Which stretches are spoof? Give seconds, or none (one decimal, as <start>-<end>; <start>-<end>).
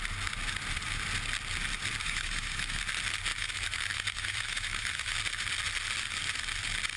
2.0-2.8; 3.3-5.1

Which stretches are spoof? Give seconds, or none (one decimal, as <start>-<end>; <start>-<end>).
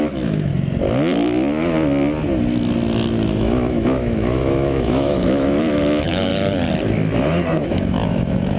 0.0-0.5; 3.4-6.3; 7.7-8.6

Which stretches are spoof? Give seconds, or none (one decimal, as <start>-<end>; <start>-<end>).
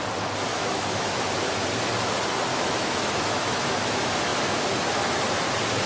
0.5-1.2; 2.5-3.6